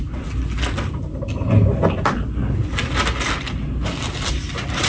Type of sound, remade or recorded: recorded